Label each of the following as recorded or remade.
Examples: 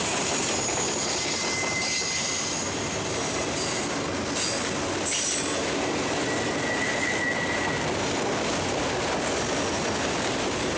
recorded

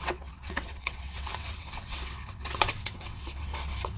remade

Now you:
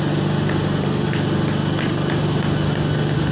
recorded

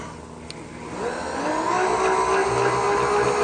recorded